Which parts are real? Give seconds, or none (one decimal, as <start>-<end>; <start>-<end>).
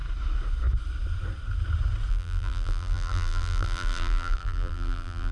0.0-2.1